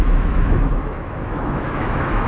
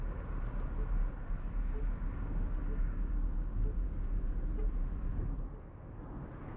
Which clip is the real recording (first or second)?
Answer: second